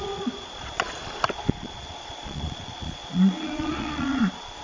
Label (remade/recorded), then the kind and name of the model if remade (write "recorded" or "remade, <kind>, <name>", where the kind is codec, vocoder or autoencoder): remade, vocoder, Vocos